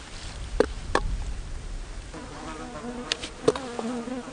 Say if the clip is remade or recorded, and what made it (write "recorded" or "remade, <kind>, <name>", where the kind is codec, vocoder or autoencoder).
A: recorded